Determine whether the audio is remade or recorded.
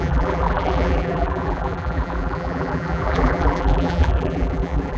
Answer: remade